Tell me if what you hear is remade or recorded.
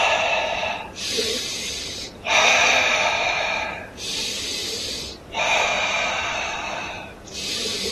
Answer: remade